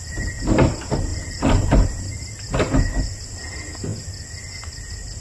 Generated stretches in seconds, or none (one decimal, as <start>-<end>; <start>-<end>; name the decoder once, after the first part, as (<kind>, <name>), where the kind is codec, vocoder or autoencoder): 1.1-2.0 (vocoder, BigVGAN v2)